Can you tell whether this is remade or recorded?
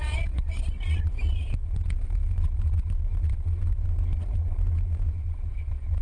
remade